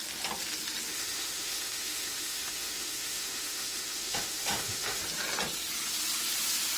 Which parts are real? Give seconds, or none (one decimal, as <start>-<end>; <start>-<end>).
0.0-0.9; 5.0-6.8